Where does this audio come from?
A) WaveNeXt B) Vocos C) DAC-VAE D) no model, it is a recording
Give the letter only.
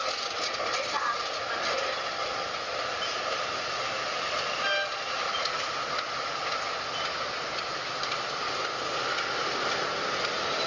D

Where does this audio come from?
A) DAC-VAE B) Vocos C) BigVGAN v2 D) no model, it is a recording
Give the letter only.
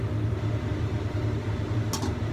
D